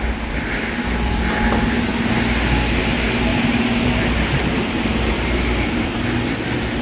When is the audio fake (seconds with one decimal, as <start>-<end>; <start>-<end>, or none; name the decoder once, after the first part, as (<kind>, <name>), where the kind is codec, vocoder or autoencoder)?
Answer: 3.3-6.0 (vocoder, BigVGAN v2)